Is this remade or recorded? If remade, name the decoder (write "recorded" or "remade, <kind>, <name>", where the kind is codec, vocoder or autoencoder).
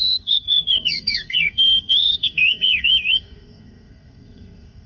remade, codec, SNAC